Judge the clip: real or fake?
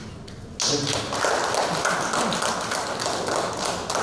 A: real